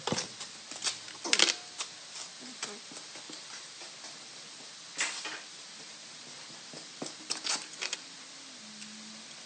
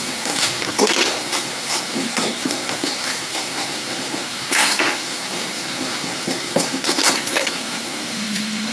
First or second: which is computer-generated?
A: second